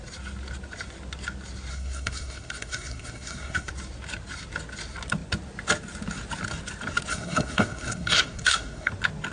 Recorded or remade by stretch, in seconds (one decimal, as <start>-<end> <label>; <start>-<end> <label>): 0.0-1.7 recorded; 1.7-3.7 remade; 3.7-7.1 recorded; 7.1-8.9 remade; 8.9-9.3 recorded

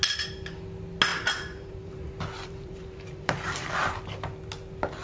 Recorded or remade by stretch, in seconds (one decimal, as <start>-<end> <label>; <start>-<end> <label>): 0.0-1.1 recorded; 1.1-4.0 remade; 4.0-5.0 recorded

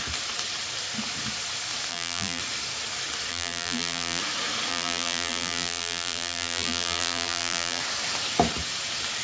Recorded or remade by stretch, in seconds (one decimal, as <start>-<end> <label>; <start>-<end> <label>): 0.0-1.9 recorded; 1.9-2.4 remade; 2.4-3.3 recorded; 3.3-4.2 remade; 4.2-4.7 recorded; 4.7-7.8 remade; 7.8-9.2 recorded

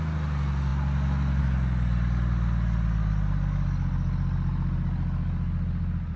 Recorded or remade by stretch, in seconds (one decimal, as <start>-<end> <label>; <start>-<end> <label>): 0.0-6.2 recorded

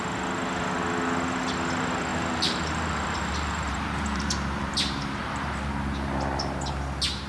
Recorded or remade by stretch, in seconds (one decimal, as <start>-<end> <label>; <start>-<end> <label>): 0.0-2.1 recorded; 2.1-5.6 remade; 5.6-7.3 recorded

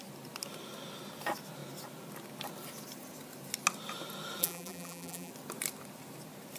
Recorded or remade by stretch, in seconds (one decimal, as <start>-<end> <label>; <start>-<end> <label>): 0.0-4.4 recorded; 4.4-5.3 remade; 5.3-6.6 recorded

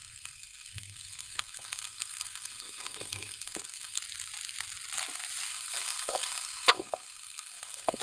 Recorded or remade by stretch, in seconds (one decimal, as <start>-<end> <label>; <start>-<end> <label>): 0.0-4.0 remade; 4.0-5.5 recorded; 5.5-8.0 remade

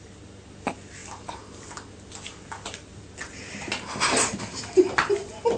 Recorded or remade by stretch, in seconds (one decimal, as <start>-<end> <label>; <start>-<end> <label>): 0.0-5.6 recorded